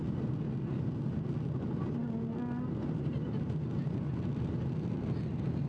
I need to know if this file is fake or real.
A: real